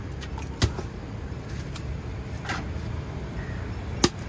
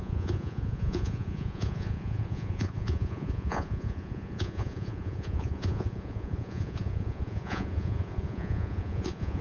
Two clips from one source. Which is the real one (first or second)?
first